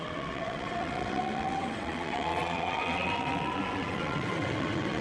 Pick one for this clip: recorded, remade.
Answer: remade